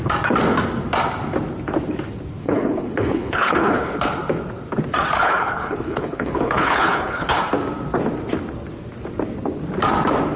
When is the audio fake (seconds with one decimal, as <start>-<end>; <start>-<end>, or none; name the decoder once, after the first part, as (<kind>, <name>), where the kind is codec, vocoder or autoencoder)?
2.4-4.0 (codec, HILCodec); 5.2-7.4